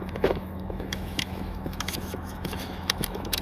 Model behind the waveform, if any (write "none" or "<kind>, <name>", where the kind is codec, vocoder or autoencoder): autoencoder, DAC-VAE